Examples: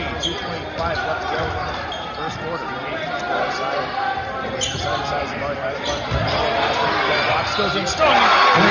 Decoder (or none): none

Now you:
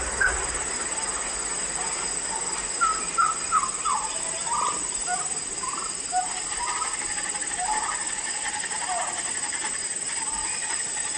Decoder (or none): none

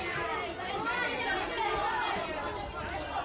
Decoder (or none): none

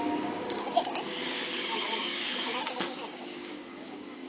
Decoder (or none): codec, DAC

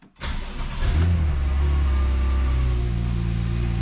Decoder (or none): none